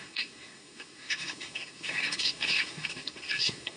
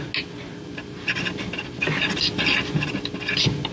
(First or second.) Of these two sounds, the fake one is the first